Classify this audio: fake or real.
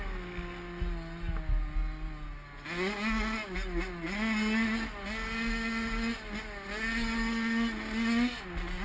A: real